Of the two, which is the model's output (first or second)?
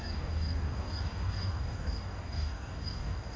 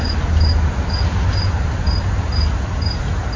first